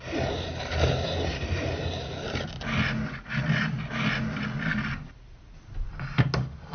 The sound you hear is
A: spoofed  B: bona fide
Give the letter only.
B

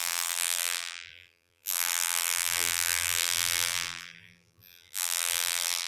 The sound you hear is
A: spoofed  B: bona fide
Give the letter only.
A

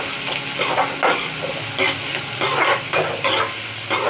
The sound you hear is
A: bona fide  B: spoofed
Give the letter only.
A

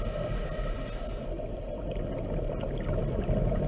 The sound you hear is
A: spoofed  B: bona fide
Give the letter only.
B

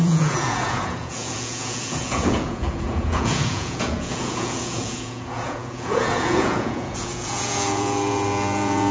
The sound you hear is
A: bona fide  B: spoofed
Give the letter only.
B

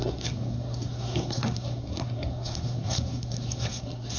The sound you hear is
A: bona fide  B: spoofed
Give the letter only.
B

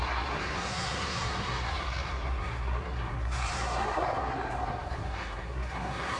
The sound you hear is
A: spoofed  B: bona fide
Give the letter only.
A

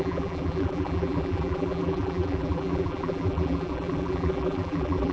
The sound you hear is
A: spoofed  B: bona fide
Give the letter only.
A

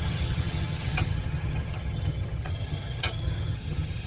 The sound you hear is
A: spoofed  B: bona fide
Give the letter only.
A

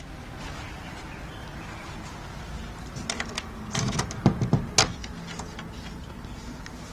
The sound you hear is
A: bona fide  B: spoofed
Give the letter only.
A